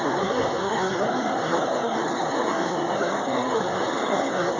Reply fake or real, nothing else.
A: fake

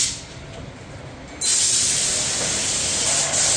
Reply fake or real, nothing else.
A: real